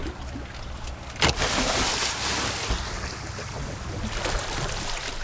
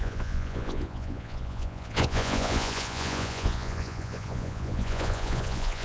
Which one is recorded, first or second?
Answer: first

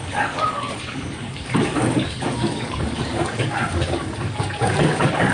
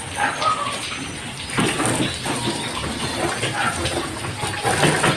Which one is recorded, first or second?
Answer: second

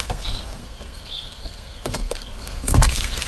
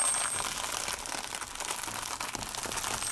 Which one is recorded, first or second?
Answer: second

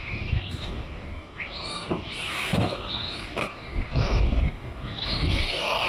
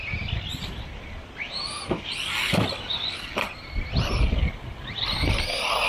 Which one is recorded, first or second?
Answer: second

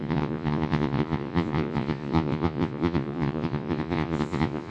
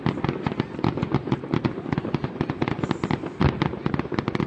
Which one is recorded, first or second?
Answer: second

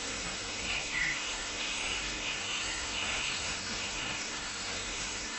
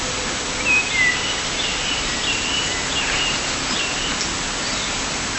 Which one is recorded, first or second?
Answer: second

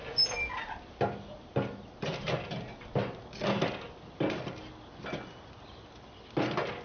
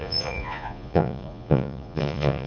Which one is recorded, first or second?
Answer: first